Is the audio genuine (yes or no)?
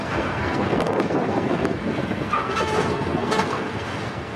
no